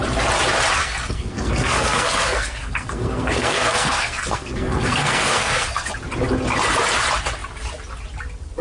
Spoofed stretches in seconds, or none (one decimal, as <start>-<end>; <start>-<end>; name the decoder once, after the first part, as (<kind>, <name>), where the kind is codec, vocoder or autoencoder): 0.8-5.9 (codec, SNAC)